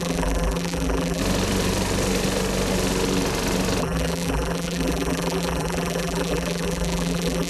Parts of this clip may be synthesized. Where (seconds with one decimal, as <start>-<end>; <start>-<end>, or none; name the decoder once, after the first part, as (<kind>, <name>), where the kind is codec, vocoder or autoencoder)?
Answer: 0.0-1.2 (vocoder, BigVGAN v2); 3.8-7.5